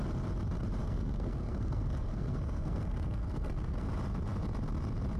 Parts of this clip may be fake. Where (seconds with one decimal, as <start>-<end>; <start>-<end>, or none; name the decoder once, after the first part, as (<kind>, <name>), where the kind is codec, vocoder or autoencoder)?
0.8-3.9 (codec, SNAC)